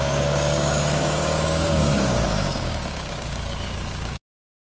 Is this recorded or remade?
remade